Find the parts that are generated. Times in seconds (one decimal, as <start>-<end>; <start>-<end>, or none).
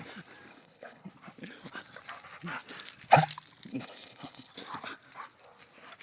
0.5-1.1; 3.7-4.5